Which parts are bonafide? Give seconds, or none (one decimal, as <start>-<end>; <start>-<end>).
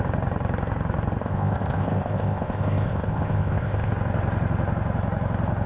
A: 0.0-1.2; 3.9-5.7